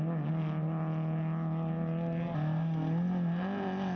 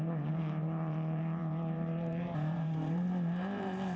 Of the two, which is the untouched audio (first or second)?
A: first